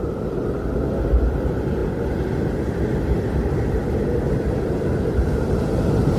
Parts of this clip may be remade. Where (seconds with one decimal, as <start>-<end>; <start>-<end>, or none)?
none